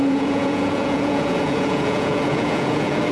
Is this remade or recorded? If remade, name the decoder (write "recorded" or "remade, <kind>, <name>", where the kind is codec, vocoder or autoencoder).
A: remade, vocoder, Vocos